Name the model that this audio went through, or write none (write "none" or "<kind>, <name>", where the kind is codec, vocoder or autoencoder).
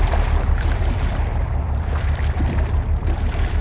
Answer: none